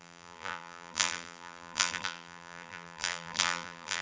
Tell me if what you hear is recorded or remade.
remade